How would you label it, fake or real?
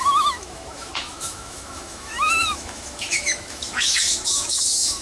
fake